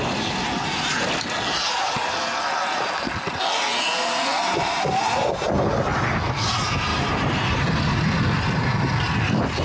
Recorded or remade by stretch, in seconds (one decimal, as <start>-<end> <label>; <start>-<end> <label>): 0.0-6.9 recorded; 6.9-7.8 remade; 7.8-9.6 recorded